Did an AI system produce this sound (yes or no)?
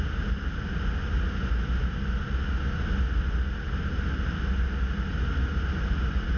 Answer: no